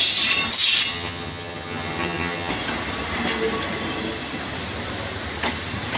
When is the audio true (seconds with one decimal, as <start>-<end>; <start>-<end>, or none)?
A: 0.0-0.9; 2.5-6.0